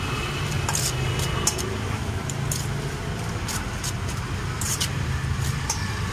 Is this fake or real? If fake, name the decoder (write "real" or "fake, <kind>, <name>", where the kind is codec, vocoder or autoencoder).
real